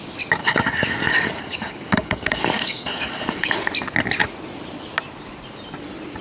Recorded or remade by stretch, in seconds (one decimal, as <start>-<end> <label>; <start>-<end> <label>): 0.0-0.4 recorded; 0.4-3.6 remade; 3.6-6.2 recorded